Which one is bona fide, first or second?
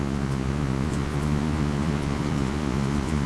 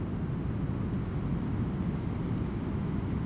second